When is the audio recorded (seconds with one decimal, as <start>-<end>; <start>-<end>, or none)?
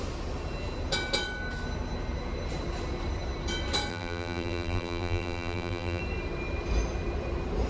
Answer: 0.0-3.9; 6.0-7.7